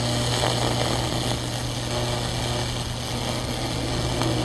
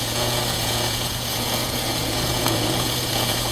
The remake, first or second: second